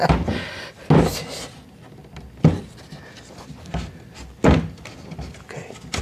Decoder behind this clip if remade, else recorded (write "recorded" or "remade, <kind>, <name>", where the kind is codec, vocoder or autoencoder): recorded